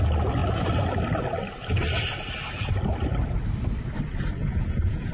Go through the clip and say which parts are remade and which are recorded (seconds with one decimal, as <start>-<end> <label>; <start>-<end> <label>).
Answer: 0.0-4.4 recorded; 4.4-5.1 remade